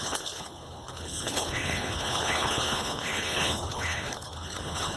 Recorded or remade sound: remade